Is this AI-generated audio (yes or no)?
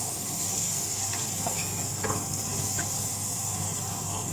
yes